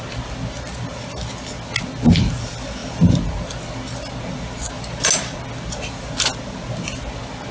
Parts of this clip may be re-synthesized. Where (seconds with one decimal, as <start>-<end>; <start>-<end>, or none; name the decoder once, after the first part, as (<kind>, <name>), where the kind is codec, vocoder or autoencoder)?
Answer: none